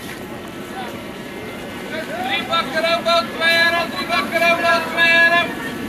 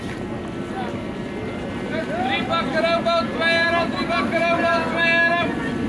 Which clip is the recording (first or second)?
second